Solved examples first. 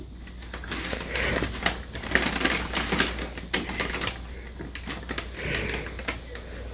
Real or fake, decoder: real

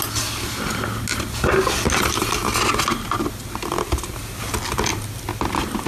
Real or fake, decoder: real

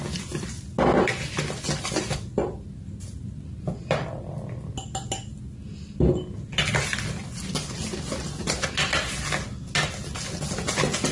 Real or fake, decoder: real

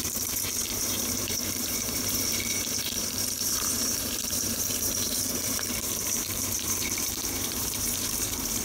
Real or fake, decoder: fake, vocoder, BigVGAN v2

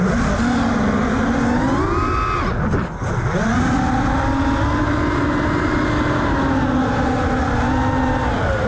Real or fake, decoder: real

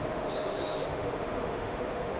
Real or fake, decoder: fake, autoencoder, DAC-VAE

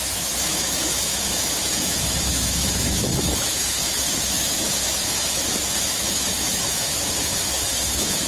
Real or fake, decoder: fake, autoencoder, DAC-VAE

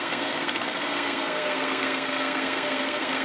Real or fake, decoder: fake, codec, SNAC